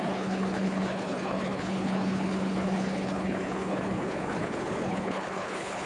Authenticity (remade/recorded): remade